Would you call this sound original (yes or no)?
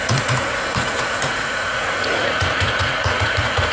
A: no